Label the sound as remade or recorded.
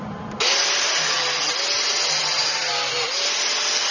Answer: recorded